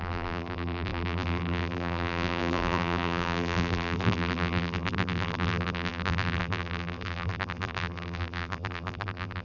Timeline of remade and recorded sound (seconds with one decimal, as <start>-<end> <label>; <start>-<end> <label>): 0.0-9.4 remade